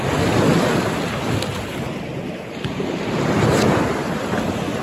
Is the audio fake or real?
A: real